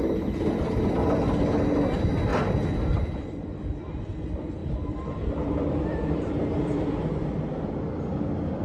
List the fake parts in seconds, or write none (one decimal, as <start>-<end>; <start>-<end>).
2.3-3.5; 4.6-7.2